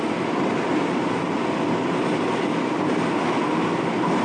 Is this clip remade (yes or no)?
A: no